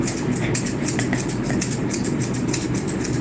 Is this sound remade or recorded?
recorded